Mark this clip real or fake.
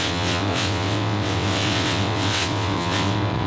fake